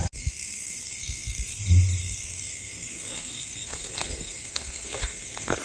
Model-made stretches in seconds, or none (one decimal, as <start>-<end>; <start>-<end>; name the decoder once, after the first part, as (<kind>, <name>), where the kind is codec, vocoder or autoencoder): 0.0-1.6 (codec, SNAC); 2.0-5.6